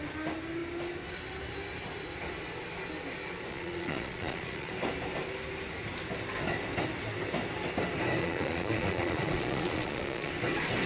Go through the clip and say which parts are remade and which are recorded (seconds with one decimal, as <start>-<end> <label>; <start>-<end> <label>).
0.0-3.5 recorded; 3.5-4.7 remade; 4.7-8.2 recorded; 8.2-10.3 remade; 10.3-10.9 recorded